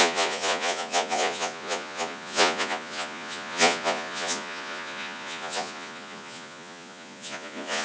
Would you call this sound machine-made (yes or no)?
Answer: yes